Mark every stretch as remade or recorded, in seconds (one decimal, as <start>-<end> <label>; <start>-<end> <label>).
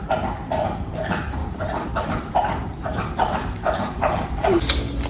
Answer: 0.0-1.4 recorded; 1.4-4.5 remade; 4.5-5.1 recorded